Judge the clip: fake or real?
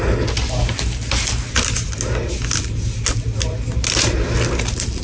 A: real